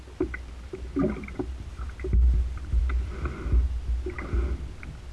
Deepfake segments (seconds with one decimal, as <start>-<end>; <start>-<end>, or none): none